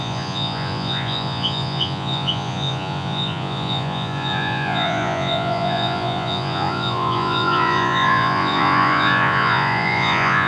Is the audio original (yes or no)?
no